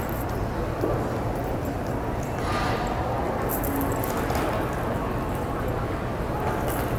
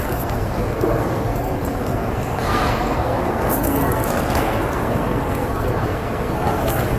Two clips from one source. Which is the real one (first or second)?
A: first